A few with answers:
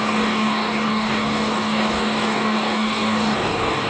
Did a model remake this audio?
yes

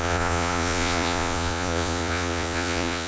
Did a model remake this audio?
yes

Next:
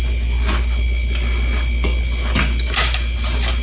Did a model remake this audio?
no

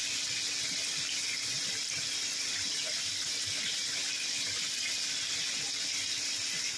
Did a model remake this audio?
no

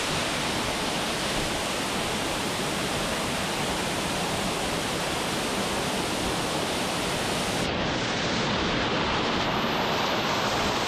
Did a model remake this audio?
no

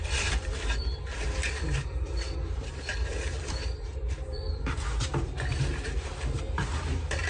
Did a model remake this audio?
yes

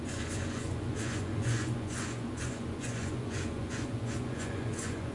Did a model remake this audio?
yes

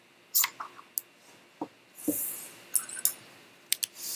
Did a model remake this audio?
no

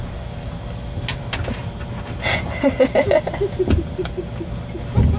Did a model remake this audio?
no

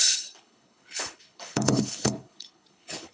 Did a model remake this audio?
yes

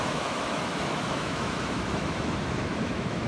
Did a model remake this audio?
yes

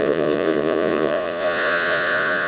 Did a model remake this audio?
yes